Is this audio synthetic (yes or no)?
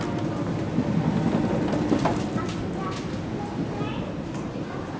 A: no